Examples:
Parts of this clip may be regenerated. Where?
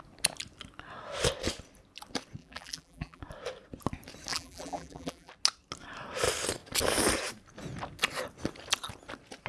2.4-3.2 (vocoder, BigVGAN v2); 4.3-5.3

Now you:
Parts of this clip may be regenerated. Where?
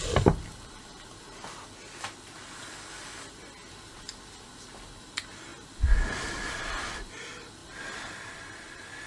none